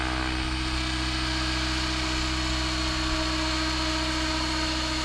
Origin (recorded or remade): recorded